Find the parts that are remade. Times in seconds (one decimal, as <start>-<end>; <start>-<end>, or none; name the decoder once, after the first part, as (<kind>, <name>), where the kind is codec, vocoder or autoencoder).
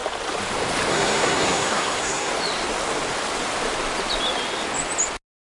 0.9-2.3 (codec, SNAC)